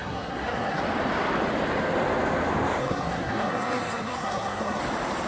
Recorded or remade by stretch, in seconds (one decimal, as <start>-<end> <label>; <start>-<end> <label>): 0.0-0.8 remade; 0.8-2.8 recorded; 2.8-4.8 remade; 4.8-5.3 recorded